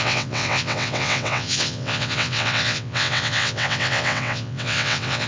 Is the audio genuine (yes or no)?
no